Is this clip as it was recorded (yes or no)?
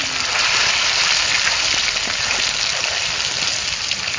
yes